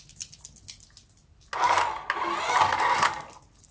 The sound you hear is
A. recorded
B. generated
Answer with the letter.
A